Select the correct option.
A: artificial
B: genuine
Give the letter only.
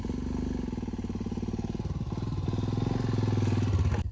B